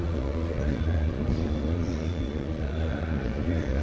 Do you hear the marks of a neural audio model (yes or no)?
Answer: yes